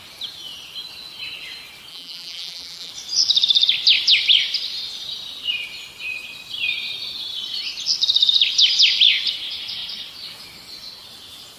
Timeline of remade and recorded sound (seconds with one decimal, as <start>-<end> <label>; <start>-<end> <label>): 0.0-1.9 recorded; 1.9-2.9 remade; 2.9-11.6 recorded